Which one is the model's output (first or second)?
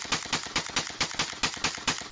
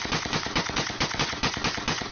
second